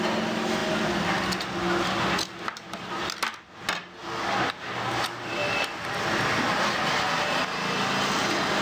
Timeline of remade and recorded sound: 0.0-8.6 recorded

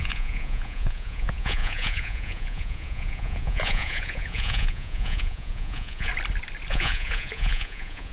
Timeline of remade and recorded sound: 0.0-6.1 remade; 6.1-6.7 recorded; 6.7-8.1 remade

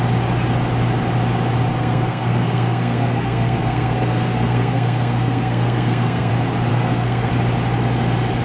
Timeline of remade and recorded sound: 0.0-1.7 recorded; 1.7-6.3 remade; 6.3-6.7 recorded; 6.7-7.3 remade; 7.3-8.4 recorded

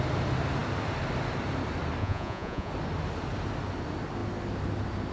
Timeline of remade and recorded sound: 0.0-2.0 recorded; 2.0-2.7 remade; 2.7-5.1 recorded

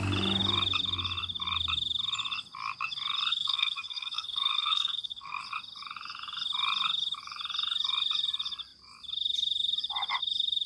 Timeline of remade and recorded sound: 0.0-3.3 recorded; 3.3-5.4 remade; 5.4-10.7 recorded

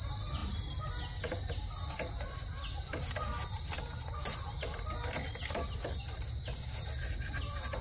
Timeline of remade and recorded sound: 0.0-7.8 recorded